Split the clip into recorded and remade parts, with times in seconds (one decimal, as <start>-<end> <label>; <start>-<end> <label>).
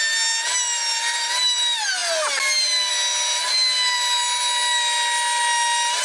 0.0-6.0 recorded